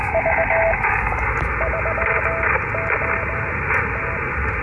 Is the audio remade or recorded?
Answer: recorded